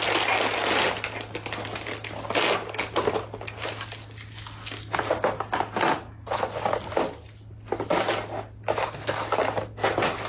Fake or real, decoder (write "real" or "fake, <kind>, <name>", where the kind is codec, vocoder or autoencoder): real